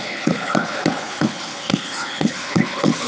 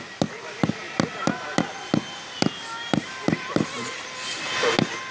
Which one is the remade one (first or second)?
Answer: first